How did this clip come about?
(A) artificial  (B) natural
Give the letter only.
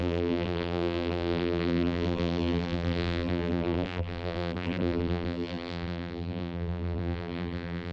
A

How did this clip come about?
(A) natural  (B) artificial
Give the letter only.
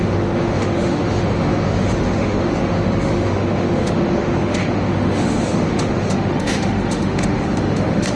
B